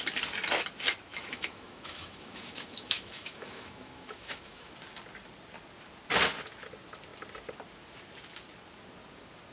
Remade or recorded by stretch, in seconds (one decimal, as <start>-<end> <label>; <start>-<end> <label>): 0.0-1.1 recorded; 1.1-4.7 remade; 4.7-9.5 recorded